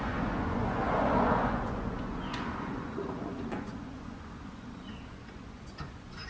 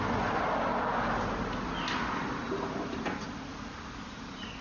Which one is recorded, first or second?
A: second